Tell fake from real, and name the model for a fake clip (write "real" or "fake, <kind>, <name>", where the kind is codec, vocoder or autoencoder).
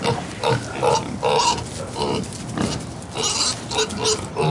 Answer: real